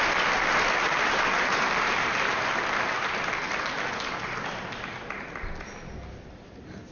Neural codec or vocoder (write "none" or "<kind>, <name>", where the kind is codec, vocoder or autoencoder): none